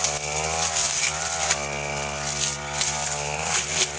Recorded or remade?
recorded